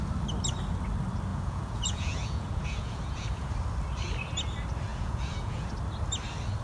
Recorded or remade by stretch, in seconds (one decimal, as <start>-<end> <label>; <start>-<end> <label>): 0.0-1.3 recorded; 1.3-3.5 remade; 3.5-4.9 recorded; 4.9-5.7 remade; 5.7-6.6 recorded